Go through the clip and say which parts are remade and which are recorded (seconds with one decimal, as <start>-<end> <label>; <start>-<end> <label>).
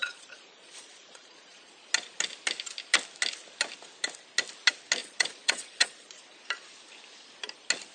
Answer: 0.0-1.7 remade; 1.7-5.0 recorded; 5.0-6.2 remade; 6.2-7.9 recorded